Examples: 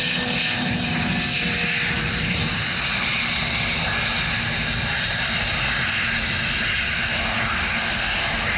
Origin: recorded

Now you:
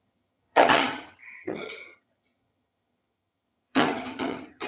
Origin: remade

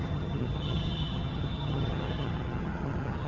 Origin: remade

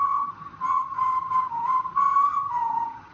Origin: remade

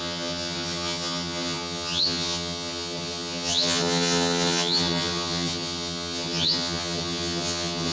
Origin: remade